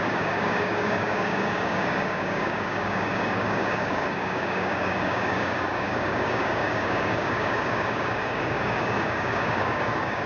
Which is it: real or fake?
fake